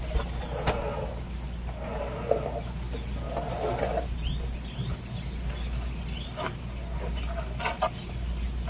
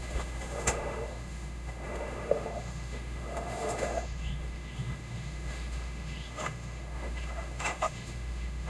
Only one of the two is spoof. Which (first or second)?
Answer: second